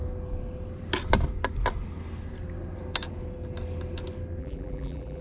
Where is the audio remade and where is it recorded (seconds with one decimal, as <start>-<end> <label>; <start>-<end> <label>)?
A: 0.0-4.4 recorded; 4.4-5.2 remade